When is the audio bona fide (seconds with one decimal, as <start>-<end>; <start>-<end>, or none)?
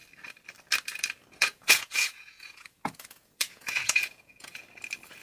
0.0-1.4; 4.6-5.2